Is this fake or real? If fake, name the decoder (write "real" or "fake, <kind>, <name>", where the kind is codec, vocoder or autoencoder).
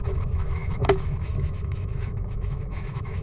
fake, autoencoder, DAC-VAE